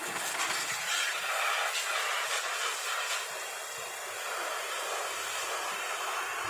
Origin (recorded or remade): recorded